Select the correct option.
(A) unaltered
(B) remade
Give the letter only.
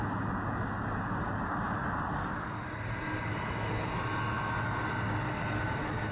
A